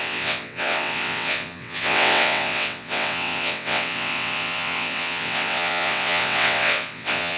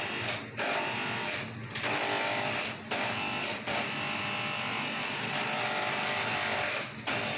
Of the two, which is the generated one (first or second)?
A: first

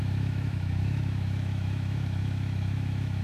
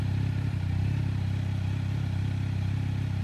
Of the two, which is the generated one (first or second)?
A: first